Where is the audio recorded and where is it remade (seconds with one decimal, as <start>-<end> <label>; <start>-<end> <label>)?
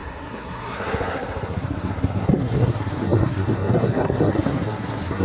0.0-5.2 remade